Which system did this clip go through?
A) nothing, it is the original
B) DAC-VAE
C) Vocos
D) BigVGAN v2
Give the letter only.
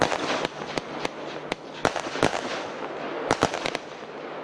A